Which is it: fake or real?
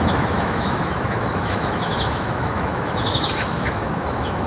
fake